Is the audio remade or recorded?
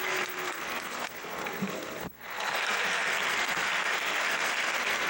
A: remade